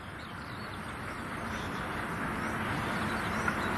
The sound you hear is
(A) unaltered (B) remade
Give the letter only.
A